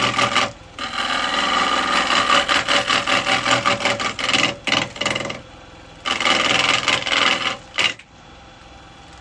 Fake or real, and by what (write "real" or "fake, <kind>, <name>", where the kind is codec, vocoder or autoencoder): real